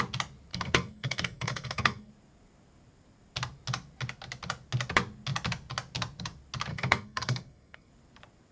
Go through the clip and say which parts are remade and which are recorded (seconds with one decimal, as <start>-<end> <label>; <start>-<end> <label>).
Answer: 0.0-0.5 recorded; 0.5-2.1 remade; 2.1-6.7 recorded; 6.7-7.9 remade; 7.9-8.5 recorded